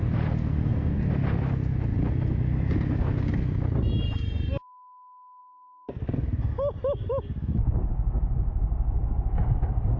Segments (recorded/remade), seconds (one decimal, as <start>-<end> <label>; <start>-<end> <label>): 0.0-0.5 recorded; 0.5-1.1 remade; 1.1-5.4 recorded; 5.4-6.0 remade; 6.0-10.0 recorded